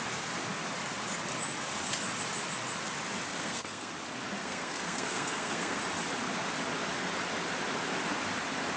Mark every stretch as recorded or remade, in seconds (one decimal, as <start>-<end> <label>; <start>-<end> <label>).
0.0-3.3 recorded; 3.3-3.9 remade; 3.9-4.4 recorded; 4.4-5.8 remade; 5.8-8.8 recorded